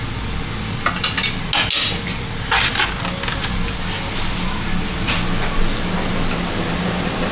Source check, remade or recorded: recorded